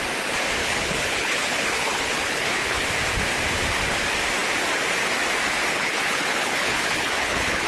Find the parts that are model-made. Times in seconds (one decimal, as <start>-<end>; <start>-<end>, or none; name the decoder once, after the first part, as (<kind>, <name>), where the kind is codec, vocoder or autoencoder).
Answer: 0.6-2.9 (codec, HILCodec); 5.7-7.7